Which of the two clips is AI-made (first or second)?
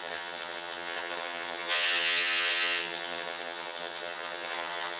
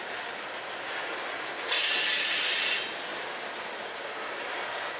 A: first